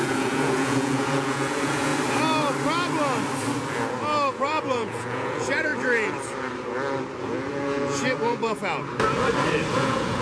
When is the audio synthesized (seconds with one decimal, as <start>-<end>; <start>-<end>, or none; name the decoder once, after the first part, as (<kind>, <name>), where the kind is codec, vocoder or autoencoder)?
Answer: 0.0-1.9 (vocoder, Vocos); 4.3-5.7; 7.2-8.6; 9.7-10.2